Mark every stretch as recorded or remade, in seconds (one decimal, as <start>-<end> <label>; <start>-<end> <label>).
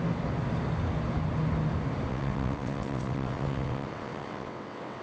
0.0-2.1 recorded; 2.1-5.0 remade